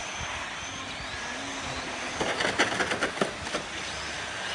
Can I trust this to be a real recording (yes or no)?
yes